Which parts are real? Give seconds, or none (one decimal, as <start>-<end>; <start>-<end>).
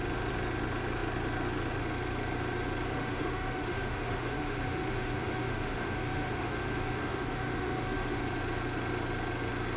0.0-2.9; 8.2-9.8